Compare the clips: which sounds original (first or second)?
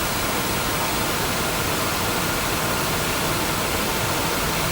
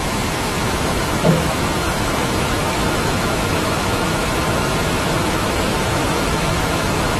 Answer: first